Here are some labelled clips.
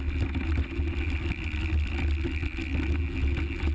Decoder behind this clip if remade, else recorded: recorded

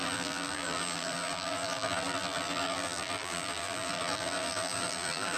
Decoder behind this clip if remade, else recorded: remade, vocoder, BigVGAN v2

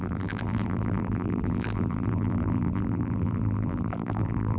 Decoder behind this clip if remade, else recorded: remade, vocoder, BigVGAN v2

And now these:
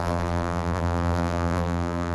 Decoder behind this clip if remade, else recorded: remade, vocoder, BigVGAN v2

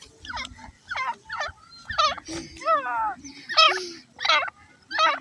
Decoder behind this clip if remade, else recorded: recorded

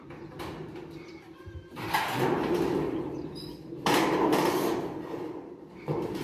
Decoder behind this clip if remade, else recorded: remade, vocoder, BigVGAN v2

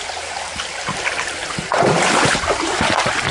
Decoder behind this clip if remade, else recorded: remade, vocoder, BigVGAN v2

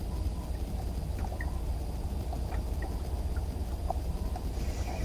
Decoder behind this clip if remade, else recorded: recorded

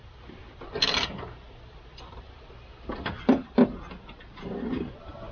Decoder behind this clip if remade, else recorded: remade, vocoder, BigVGAN v2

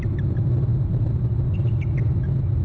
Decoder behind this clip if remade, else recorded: remade, vocoder, BigVGAN v2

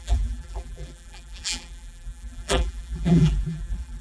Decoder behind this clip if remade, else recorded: remade, vocoder, BigVGAN v2